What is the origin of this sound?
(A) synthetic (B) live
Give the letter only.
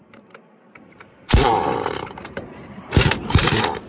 A